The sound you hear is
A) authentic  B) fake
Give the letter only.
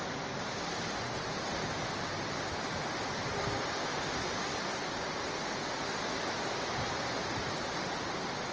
A